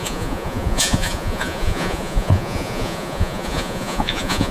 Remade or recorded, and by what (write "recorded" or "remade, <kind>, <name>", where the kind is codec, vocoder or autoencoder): remade, vocoder, Vocos